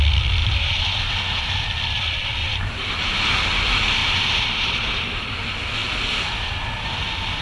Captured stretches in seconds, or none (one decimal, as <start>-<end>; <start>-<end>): 0.0-0.4; 1.0-2.4; 3.4-4.0; 5.2-7.4